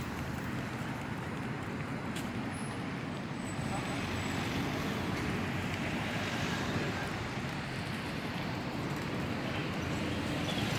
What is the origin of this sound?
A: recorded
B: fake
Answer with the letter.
B